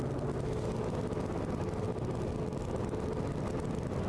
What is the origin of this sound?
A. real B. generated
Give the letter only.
A